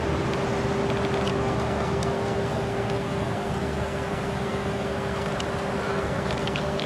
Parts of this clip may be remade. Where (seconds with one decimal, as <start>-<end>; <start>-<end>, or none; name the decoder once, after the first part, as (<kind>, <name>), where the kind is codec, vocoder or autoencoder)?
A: 1.3-5.3 (codec, SNAC); 5.9-6.9